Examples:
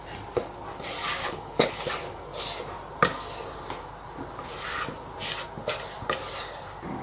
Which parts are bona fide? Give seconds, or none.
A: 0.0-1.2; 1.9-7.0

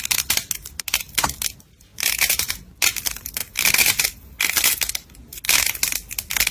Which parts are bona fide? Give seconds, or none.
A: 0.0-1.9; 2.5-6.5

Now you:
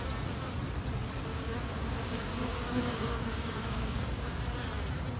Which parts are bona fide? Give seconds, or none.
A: 0.0-1.3; 4.4-5.2